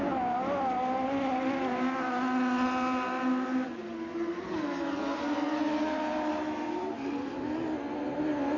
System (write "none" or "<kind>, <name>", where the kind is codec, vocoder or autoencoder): none